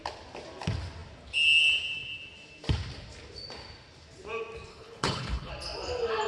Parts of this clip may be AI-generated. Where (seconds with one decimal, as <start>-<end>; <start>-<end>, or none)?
4.7-5.5